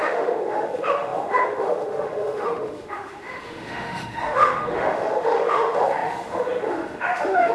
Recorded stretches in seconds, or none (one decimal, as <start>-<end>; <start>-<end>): none